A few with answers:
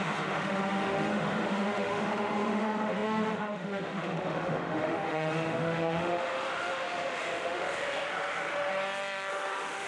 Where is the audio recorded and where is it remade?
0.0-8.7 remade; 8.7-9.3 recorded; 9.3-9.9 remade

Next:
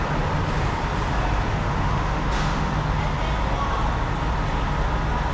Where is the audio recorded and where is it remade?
0.0-1.5 recorded; 1.5-2.7 remade; 2.7-5.3 recorded

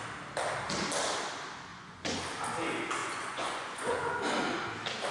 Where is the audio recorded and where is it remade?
0.0-1.7 recorded; 1.7-2.2 remade; 2.2-3.0 recorded; 3.0-4.2 remade; 4.2-5.1 recorded

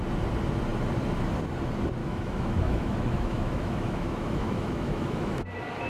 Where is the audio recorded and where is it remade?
0.0-2.0 recorded; 2.0-5.4 remade; 5.4-5.9 recorded

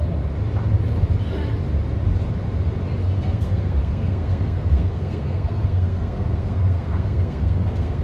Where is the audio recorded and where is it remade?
0.0-3.0 recorded; 3.0-8.0 remade

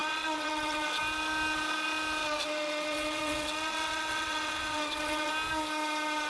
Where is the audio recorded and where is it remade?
0.0-1.0 remade; 1.0-2.2 recorded; 2.2-5.3 remade; 5.3-6.3 recorded

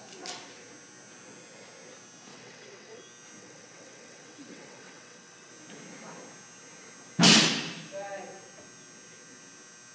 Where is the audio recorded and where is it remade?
0.0-2.3 recorded; 2.3-3.0 remade; 3.0-3.4 recorded; 3.4-5.5 remade; 5.5-9.9 recorded

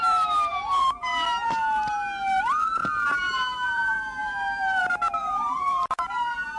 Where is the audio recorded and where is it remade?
0.0-1.1 remade; 1.1-3.3 recorded; 3.3-6.6 remade